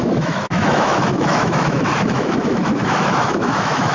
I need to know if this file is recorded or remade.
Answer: remade